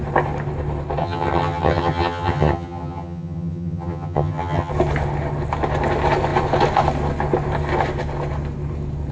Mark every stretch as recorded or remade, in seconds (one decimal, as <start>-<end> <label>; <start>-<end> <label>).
0.0-1.0 recorded; 1.0-4.7 remade; 4.7-9.1 recorded

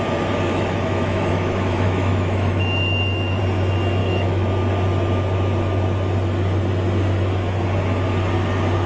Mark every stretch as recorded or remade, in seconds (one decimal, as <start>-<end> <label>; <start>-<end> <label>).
0.0-0.5 recorded; 0.5-3.4 remade; 3.4-4.0 recorded; 4.0-4.5 remade; 4.5-8.9 recorded

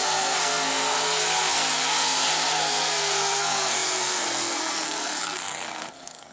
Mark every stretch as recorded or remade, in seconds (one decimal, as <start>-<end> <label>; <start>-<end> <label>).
0.0-6.3 remade

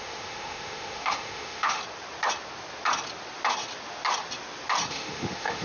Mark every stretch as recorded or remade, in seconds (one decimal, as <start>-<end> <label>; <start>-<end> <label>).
0.0-1.8 remade; 1.8-4.9 recorded; 4.9-5.6 remade

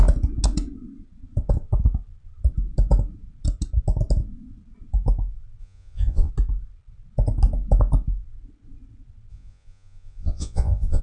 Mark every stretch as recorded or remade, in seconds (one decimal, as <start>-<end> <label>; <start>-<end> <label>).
0.0-5.6 recorded; 5.6-6.3 remade; 6.3-9.3 recorded; 9.3-11.0 remade

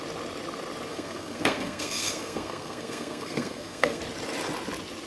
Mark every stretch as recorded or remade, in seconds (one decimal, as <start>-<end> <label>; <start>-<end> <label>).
0.0-0.9 recorded; 0.9-4.0 remade; 4.0-5.1 recorded